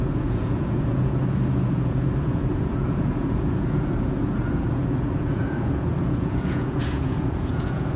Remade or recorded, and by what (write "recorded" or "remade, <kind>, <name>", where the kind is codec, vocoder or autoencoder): remade, vocoder, Vocos